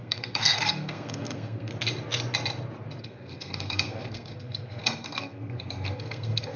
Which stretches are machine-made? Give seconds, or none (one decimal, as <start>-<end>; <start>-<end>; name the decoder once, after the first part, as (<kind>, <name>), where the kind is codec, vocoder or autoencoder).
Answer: 0.0-1.7 (codec, SNAC); 3.0-6.6